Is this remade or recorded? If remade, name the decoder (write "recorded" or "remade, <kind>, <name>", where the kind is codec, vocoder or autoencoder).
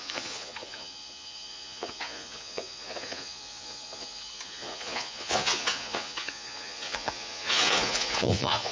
remade, vocoder, Vocos